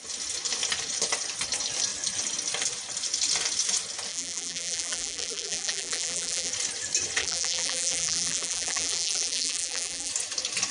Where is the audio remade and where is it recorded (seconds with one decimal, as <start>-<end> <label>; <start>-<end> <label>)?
0.0-4.1 recorded; 4.1-6.5 remade; 6.5-7.2 recorded; 7.2-10.1 remade; 10.1-10.7 recorded